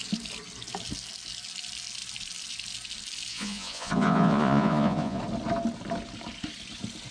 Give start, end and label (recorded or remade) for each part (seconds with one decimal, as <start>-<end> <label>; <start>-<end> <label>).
0.0-3.3 recorded; 3.3-5.2 remade; 5.2-7.1 recorded